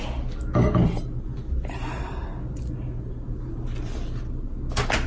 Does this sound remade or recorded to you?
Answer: recorded